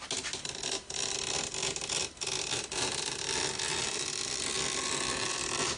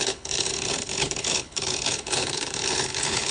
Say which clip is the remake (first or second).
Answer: second